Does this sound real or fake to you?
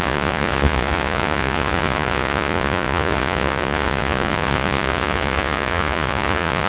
fake